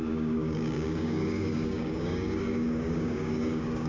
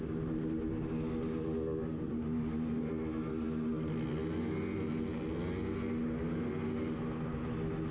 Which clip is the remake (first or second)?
first